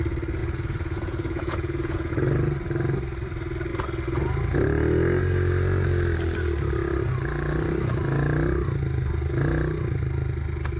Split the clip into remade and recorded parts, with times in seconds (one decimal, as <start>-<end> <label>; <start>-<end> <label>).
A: 0.0-0.4 recorded; 0.4-2.1 remade; 2.1-10.8 recorded